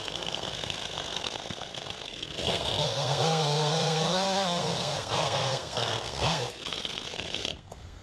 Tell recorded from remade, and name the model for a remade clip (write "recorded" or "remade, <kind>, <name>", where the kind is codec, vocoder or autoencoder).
remade, codec, SNAC